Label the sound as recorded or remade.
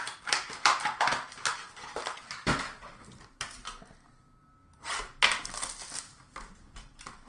recorded